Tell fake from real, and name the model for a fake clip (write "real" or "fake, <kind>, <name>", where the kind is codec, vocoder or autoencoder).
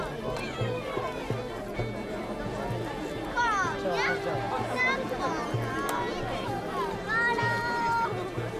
real